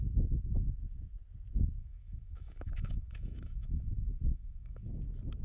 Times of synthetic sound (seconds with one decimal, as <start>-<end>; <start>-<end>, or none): 1.8-5.0